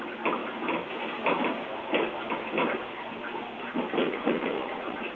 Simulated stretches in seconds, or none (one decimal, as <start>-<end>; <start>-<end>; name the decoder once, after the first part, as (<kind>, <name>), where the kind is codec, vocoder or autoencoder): 4.0-5.1 (vocoder, Vocos)

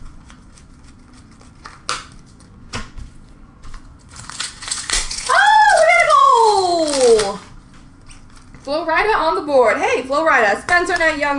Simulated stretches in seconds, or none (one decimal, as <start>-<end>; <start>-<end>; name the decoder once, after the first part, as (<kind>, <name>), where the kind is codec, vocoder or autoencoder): 0.0-0.6 (vocoder, Vocos); 2.3-6.7; 8.9-11.4

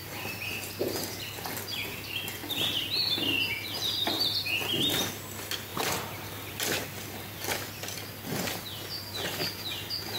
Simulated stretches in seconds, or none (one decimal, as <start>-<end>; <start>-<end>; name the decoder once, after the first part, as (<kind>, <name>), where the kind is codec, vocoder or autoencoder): none

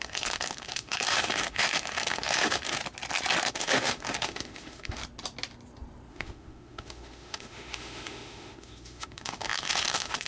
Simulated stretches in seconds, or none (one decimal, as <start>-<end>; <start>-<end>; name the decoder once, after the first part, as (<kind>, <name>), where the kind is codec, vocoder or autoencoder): 0.0-2.8 (autoencoder, DAC-VAE); 3.5-5.0; 6.1-10.3

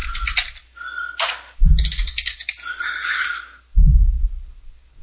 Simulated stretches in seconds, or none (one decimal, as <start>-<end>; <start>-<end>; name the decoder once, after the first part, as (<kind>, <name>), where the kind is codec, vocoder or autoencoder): none